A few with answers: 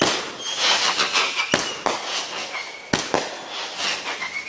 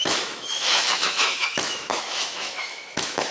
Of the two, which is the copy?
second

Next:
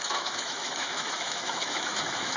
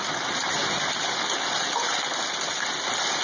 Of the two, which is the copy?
first